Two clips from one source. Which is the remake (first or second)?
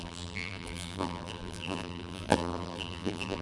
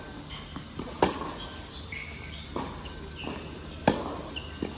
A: first